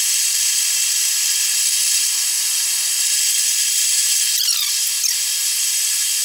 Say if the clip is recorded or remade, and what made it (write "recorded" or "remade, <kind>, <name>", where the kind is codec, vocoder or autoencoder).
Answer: recorded